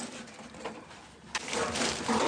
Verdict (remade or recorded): remade